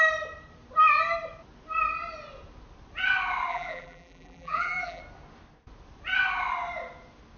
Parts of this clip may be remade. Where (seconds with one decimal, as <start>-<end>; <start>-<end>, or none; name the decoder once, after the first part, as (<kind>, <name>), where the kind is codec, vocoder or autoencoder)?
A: 3.5-5.0 (vocoder, BigVGAN v2)